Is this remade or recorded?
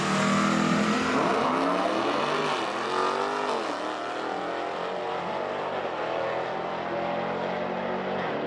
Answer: recorded